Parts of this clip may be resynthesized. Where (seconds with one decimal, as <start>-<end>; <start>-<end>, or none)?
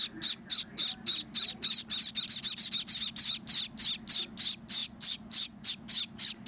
4.8-5.7